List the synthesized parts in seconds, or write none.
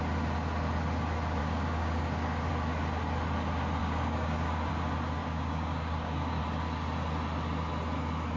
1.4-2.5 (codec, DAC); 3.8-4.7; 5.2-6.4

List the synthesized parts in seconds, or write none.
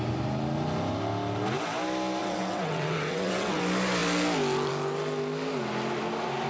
2.2-3.6 (vocoder, WaveNeXt)